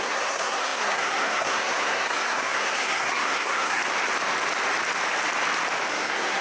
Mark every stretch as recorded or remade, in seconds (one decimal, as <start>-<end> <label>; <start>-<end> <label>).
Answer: 0.0-3.8 remade; 3.8-5.9 recorded; 5.9-6.4 remade